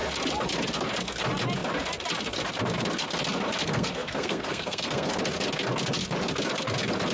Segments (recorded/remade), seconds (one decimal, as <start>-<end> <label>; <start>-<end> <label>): 0.0-3.6 recorded; 3.6-5.1 remade; 5.1-7.1 recorded